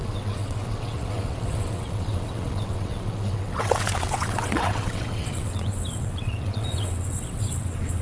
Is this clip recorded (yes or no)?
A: no